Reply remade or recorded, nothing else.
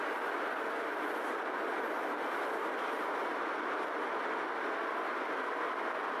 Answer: recorded